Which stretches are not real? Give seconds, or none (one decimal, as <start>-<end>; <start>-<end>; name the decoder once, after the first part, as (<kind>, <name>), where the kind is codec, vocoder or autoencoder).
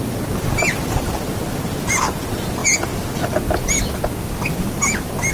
none